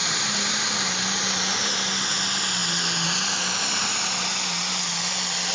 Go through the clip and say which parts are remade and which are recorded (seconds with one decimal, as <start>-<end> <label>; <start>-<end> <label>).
0.0-5.5 recorded

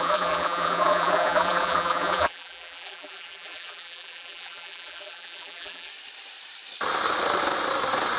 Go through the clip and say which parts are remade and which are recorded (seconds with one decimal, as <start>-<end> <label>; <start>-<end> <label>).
0.0-5.9 remade; 5.9-8.2 recorded

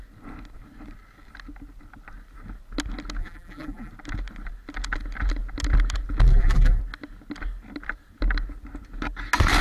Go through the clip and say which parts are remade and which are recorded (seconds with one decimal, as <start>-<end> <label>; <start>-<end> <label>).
0.0-3.2 recorded; 3.2-3.9 remade; 3.9-6.3 recorded; 6.3-6.8 remade; 6.8-9.6 recorded

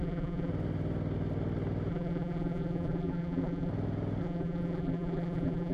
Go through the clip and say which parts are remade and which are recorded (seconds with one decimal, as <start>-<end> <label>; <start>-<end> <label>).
0.0-0.5 remade; 0.5-1.9 recorded; 1.9-3.7 remade; 3.7-4.2 recorded; 4.2-5.7 remade

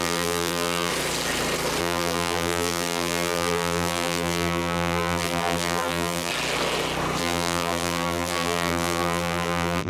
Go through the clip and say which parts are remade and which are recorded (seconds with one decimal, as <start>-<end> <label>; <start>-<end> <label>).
0.0-0.9 remade; 0.9-1.8 recorded; 1.8-6.3 remade; 6.3-7.2 recorded; 7.2-9.9 remade